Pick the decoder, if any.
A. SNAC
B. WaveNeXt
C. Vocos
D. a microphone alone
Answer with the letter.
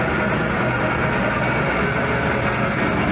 D